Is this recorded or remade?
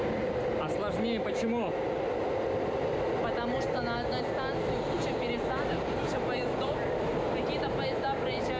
recorded